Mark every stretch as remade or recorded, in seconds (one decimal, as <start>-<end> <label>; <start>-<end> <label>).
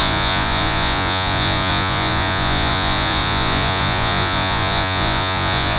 0.0-5.8 remade